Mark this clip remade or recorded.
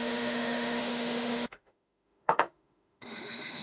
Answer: remade